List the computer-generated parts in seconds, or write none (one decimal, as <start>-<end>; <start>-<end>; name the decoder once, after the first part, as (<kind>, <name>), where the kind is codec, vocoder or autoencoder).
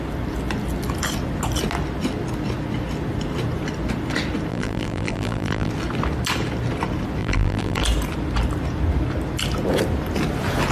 4.5-5.7 (vocoder, BigVGAN v2); 7.2-7.8